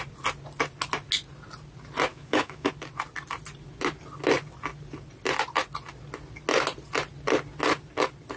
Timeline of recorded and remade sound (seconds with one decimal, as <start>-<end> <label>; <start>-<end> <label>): 0.0-2.1 recorded; 2.1-2.7 remade; 2.7-8.4 recorded